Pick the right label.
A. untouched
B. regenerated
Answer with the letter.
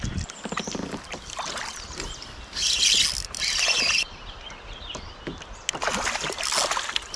A